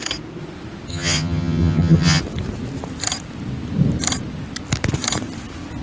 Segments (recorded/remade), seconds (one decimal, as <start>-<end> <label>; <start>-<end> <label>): 0.0-0.9 recorded; 0.9-2.2 remade; 2.2-5.8 recorded